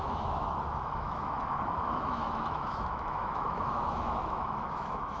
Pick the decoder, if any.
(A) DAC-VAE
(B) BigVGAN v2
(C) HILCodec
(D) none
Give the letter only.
A